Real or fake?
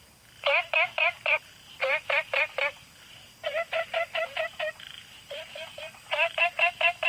fake